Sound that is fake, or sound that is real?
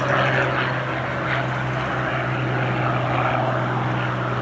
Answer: real